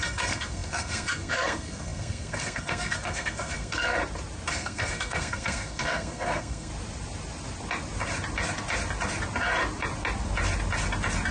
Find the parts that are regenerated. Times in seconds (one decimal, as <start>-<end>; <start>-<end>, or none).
0.0-4.0; 4.5-6.7